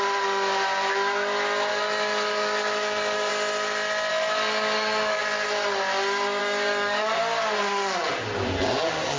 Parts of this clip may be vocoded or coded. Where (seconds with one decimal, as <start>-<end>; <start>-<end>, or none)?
1.7-3.3; 4.1-5.2; 6.4-7.2